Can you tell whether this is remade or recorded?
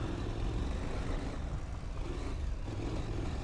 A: recorded